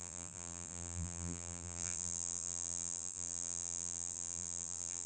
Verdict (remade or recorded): remade